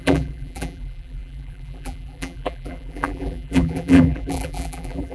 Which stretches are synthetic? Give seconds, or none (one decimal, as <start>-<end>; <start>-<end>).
0.0-5.1